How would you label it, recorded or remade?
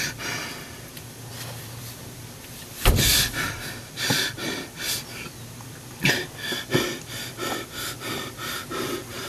remade